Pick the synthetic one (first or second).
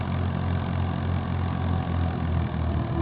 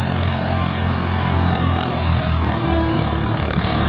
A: second